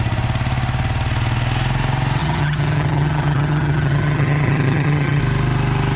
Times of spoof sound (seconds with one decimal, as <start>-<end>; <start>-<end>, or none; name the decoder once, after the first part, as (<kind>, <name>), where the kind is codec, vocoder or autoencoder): 2.2-5.2 (vocoder, HiFi-GAN)